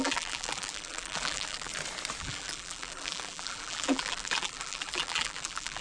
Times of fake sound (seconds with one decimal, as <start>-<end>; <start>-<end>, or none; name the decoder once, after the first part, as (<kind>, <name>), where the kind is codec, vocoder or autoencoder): 0.0-1.7 (vocoder, BigVGAN v2); 2.2-5.8